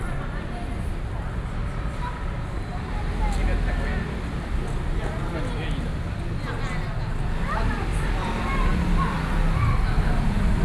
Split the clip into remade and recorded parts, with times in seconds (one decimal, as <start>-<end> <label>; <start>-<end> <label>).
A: 0.0-10.6 recorded